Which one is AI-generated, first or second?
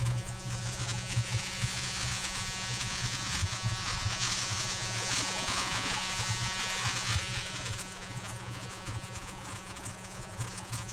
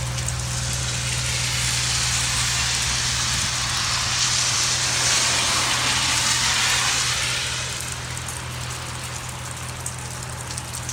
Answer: first